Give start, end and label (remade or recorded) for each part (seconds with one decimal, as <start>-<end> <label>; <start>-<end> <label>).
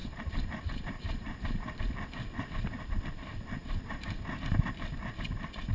0.0-1.8 remade; 1.8-3.6 recorded; 3.6-4.6 remade; 4.6-5.7 recorded